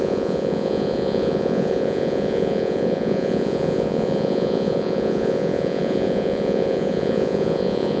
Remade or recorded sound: remade